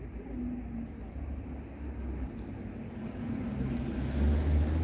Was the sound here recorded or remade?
recorded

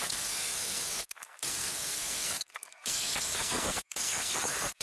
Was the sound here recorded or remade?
remade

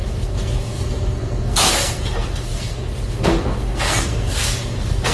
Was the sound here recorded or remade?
remade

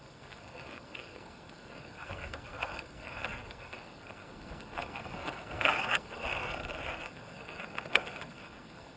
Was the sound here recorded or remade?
remade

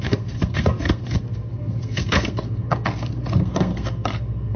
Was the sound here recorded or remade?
remade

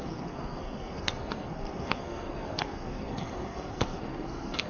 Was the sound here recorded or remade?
remade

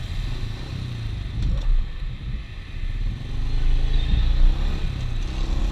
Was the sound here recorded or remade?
recorded